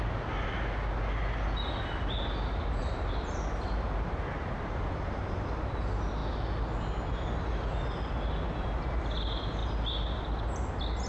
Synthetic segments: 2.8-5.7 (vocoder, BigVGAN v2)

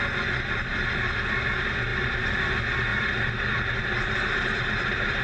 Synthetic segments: 1.9-2.5 (vocoder, BigVGAN v2); 2.9-5.2